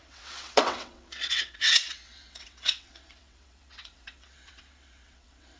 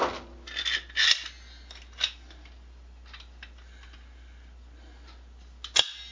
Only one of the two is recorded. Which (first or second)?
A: second